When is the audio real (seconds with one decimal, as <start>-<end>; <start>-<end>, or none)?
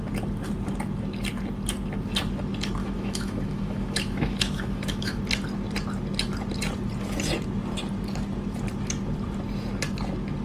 0.0-2.8; 5.2-10.4